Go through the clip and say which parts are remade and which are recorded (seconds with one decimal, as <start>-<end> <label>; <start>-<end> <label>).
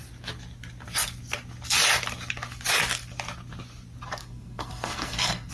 0.0-4.2 recorded; 4.2-5.5 remade